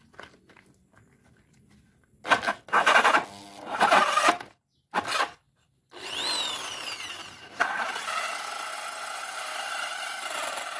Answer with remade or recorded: recorded